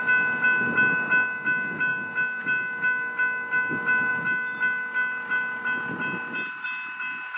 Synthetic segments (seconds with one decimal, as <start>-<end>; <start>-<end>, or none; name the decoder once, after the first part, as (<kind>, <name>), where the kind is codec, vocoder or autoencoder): none